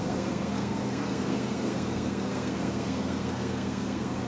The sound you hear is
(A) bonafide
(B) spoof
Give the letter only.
B